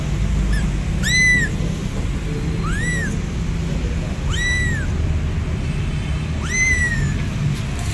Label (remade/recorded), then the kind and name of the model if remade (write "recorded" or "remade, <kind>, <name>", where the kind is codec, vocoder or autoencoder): recorded